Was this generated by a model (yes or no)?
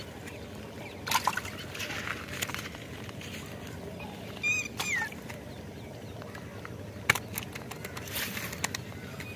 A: no